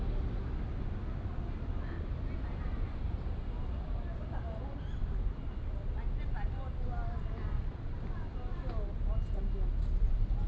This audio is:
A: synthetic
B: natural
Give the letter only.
B